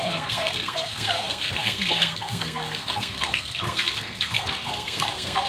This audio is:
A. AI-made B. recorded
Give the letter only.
A